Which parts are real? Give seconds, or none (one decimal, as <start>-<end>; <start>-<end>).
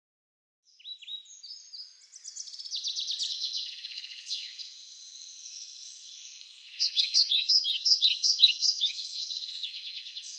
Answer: 0.4-3.3